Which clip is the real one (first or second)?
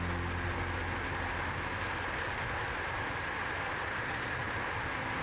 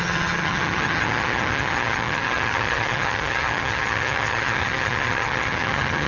first